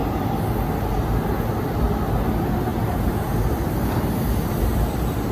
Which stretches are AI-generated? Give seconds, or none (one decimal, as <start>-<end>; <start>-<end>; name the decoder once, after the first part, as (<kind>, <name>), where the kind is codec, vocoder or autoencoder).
none